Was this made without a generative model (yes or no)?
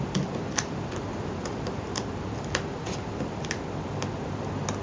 yes